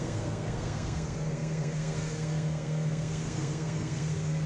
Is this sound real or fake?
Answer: fake